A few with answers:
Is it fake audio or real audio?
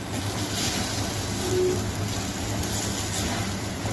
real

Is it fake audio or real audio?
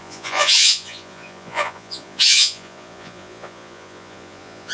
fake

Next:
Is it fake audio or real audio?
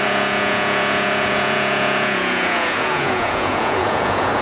fake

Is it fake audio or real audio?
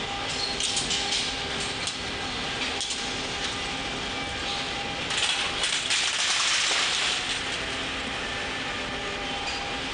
real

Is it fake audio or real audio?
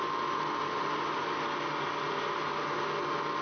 real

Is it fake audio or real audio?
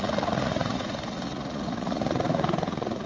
fake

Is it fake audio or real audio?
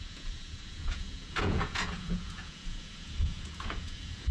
fake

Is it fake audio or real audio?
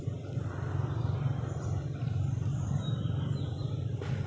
real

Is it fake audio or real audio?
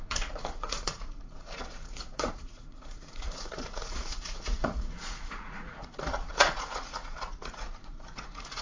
fake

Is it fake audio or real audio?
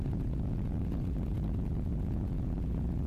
fake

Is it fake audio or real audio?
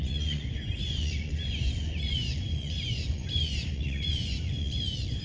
fake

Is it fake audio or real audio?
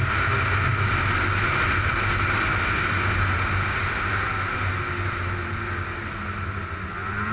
real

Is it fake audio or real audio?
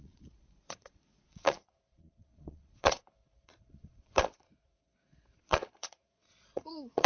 fake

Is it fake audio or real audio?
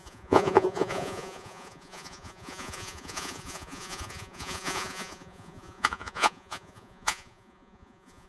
fake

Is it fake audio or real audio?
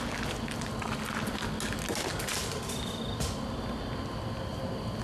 real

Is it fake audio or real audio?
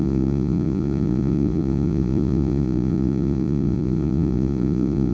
fake